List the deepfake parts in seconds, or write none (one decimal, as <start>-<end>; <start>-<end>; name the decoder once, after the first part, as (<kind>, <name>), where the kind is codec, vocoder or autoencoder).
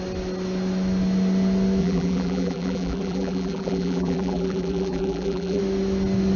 1.8-5.6 (vocoder, BigVGAN v2)